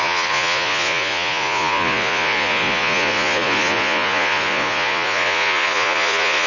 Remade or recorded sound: remade